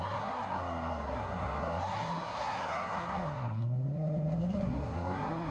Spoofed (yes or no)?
yes